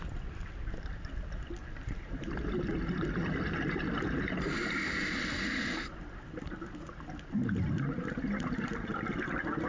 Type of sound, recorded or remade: recorded